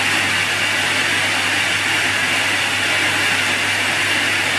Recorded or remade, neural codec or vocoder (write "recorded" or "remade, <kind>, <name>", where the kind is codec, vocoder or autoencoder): recorded